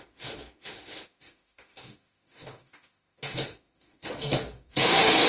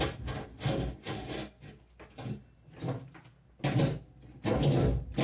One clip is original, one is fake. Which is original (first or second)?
second